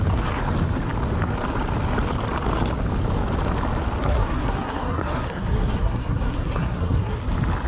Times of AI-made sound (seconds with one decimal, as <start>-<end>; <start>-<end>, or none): 4.0-7.2